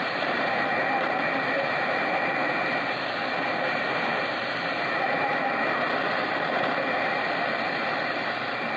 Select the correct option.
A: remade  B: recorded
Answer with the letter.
A